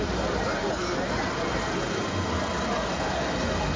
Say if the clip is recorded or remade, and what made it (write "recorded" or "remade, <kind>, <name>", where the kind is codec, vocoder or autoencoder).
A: recorded